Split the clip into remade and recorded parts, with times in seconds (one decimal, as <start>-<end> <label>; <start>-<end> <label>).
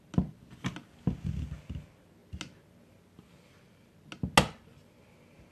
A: 0.0-5.5 recorded